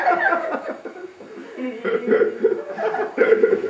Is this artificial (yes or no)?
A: no